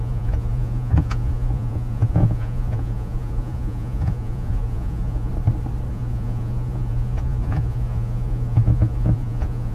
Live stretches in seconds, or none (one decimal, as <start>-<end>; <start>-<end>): 5.3-5.9